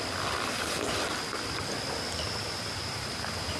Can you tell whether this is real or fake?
real